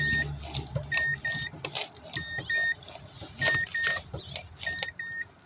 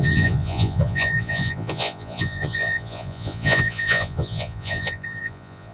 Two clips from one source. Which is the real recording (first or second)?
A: first